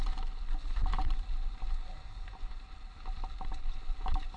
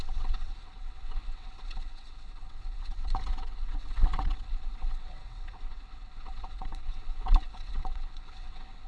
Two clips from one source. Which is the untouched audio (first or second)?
first